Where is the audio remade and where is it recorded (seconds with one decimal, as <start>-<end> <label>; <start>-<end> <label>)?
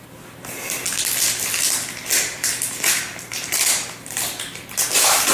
0.0-2.1 recorded; 2.1-5.3 remade